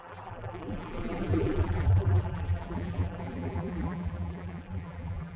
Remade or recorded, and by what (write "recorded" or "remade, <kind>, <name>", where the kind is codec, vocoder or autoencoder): remade, vocoder, BigVGAN v2